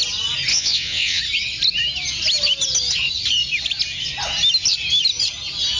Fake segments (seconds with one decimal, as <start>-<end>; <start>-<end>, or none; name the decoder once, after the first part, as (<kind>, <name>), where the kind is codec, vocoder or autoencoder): 0.5-1.2 (vocoder, WaveNeXt)